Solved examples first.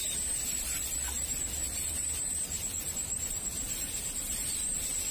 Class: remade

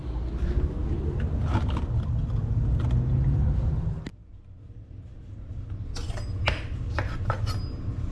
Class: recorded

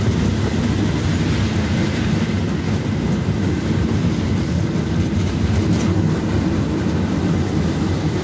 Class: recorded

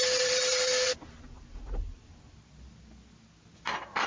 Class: recorded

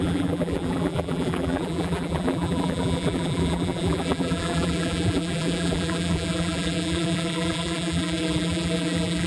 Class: remade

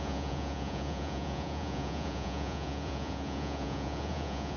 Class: remade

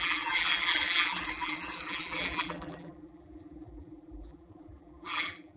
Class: remade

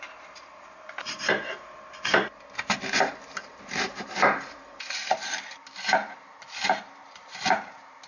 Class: remade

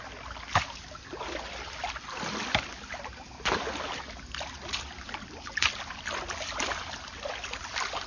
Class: recorded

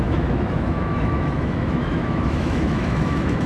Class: remade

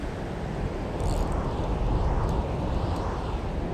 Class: recorded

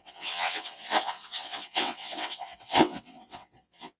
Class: remade